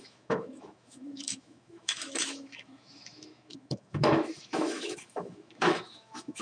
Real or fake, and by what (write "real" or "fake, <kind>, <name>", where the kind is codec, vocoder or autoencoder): fake, autoencoder, DAC-VAE